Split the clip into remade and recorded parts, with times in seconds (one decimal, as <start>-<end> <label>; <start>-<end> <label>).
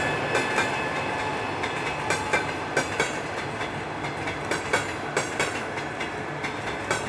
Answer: 0.0-7.1 recorded